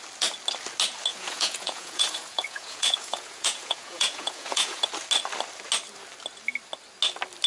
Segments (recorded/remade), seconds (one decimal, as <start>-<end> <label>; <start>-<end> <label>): 0.0-1.1 recorded; 1.1-4.9 remade; 4.9-7.5 recorded